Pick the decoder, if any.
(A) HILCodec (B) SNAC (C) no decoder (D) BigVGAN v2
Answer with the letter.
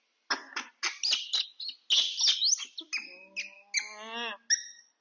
C